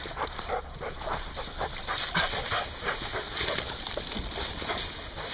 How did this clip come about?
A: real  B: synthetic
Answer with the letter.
A